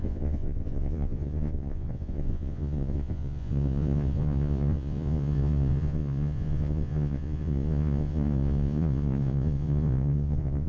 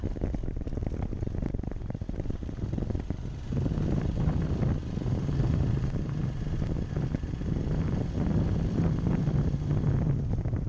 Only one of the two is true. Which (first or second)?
second